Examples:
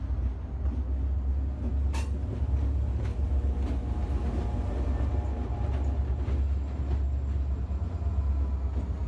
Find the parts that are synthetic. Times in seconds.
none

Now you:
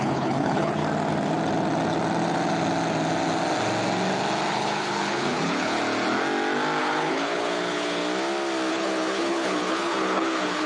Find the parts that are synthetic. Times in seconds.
0.0-0.8 (codec, HILCodec); 4.5-5.8; 6.8-8.0; 8.7-10.7

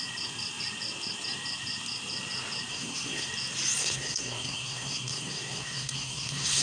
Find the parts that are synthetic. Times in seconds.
2.7-3.3 (codec, SNAC); 3.8-6.6

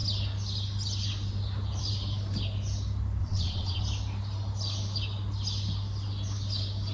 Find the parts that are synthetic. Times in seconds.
3.2-3.8 (vocoder, WaveNeXt)

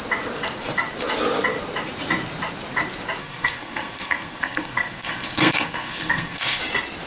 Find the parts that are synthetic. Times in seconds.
3.2-6.6 (codec, SNAC)

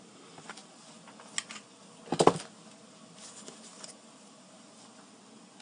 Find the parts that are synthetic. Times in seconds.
none